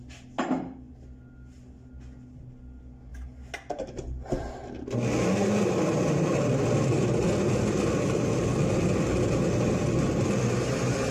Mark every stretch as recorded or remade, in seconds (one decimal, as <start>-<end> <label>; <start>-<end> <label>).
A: 0.0-11.1 recorded